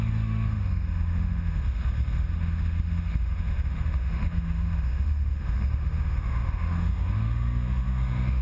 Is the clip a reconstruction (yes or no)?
yes